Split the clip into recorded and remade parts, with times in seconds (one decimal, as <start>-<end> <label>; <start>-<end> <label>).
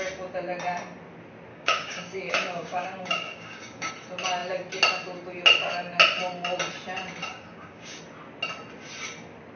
0.0-1.5 recorded; 1.5-3.9 remade; 3.9-7.3 recorded; 7.3-8.0 remade; 8.0-9.6 recorded